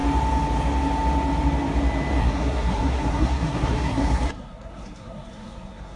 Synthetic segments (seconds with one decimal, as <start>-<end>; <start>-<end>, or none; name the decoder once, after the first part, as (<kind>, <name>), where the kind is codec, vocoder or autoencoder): 2.2-6.0 (codec, SNAC)